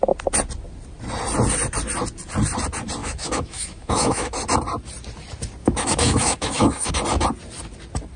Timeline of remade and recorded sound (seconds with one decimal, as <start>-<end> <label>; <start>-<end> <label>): 0.0-3.0 recorded; 3.0-4.3 remade; 4.3-5.6 recorded; 5.6-6.9 remade; 6.9-8.2 recorded